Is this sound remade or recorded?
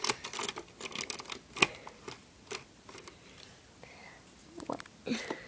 recorded